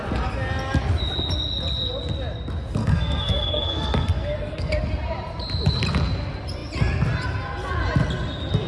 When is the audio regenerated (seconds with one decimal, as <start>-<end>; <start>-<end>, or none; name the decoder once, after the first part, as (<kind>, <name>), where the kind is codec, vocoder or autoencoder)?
2.8-4.7 (codec, SNAC)